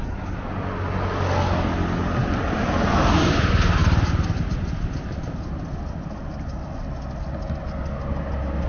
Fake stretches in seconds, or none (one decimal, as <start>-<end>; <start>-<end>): none